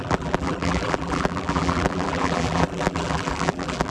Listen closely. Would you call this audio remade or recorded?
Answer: remade